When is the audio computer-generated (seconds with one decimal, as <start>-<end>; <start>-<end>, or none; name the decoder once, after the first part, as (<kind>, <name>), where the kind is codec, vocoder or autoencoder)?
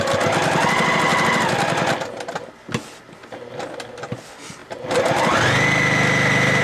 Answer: none